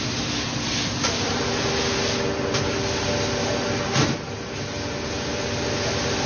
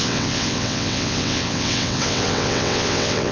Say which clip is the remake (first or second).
second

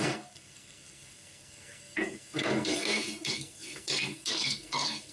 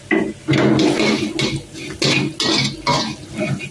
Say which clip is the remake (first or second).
first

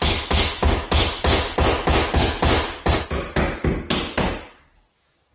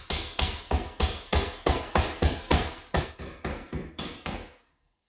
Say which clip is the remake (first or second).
second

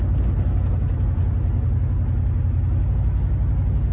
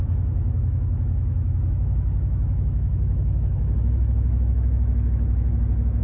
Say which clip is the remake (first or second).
second